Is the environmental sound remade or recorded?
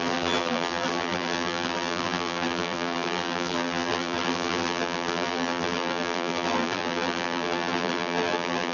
remade